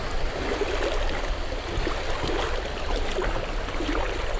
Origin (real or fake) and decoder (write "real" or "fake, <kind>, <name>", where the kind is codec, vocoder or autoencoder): real